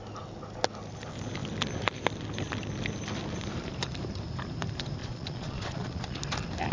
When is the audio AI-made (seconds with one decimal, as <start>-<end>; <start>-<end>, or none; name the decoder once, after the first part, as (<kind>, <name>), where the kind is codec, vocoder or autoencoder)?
5.0-6.2 (vocoder, Vocos)